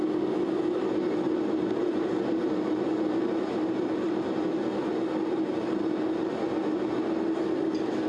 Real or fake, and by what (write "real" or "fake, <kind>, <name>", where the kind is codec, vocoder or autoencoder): real